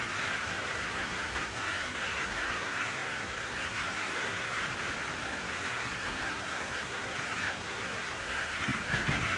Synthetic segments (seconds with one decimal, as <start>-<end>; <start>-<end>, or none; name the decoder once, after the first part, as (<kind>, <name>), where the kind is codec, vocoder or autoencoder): 0.0-4.6 (codec, SNAC); 5.2-9.4